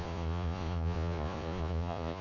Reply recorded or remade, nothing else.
remade